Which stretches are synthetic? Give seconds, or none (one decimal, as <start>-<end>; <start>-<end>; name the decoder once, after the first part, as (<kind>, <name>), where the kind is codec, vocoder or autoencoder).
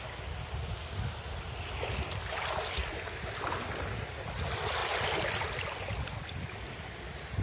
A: none